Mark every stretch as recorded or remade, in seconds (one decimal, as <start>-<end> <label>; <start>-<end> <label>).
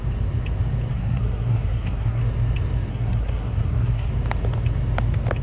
0.0-0.9 recorded; 0.9-2.2 remade; 2.2-2.9 recorded; 2.9-4.1 remade; 4.1-5.4 recorded